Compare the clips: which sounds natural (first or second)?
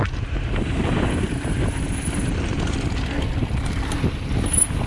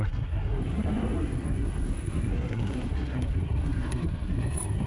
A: first